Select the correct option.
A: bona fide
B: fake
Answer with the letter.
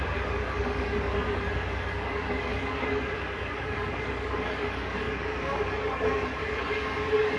B